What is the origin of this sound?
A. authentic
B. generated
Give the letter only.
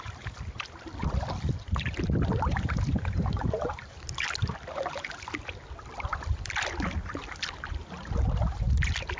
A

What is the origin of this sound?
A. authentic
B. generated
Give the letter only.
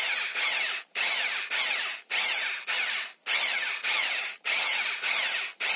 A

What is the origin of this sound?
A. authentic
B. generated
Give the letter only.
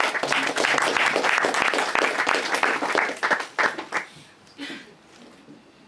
A